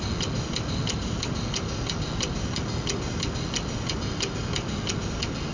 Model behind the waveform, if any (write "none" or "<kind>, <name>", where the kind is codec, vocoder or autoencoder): none